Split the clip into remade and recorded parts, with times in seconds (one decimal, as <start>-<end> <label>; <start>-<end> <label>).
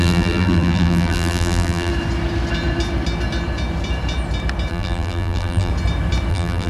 0.0-1.9 remade; 1.9-4.7 recorded; 4.7-5.7 remade; 5.7-6.3 recorded; 6.3-6.7 remade